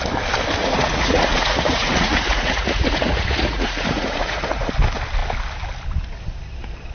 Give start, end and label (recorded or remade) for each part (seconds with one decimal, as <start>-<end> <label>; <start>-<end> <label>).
0.0-0.6 recorded; 0.6-4.7 remade; 4.7-6.9 recorded